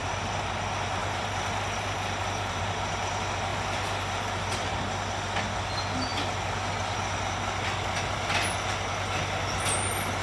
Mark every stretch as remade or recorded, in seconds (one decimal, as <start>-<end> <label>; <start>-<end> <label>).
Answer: 0.0-1.0 recorded; 1.0-2.6 remade; 2.6-3.5 recorded; 3.5-4.5 remade; 4.5-10.2 recorded

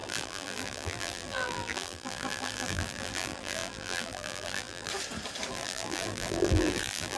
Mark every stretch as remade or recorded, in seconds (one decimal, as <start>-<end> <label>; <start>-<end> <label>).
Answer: 0.0-4.9 remade; 4.9-5.5 recorded; 5.5-7.2 remade